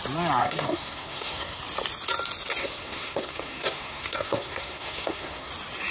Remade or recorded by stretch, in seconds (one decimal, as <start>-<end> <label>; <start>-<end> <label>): 0.0-0.4 recorded; 0.4-1.6 remade; 1.6-2.6 recorded; 2.6-5.5 remade; 5.5-5.9 recorded